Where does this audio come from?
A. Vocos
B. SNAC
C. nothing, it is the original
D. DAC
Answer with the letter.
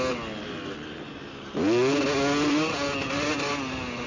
C